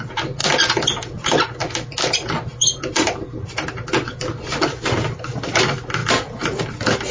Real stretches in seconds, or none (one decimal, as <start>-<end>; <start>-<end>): 0.0-6.0; 6.6-7.1